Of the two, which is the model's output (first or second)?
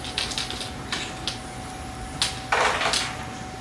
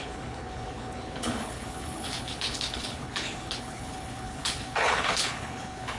second